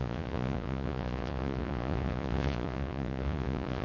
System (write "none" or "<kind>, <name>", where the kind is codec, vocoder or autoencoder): vocoder, Vocos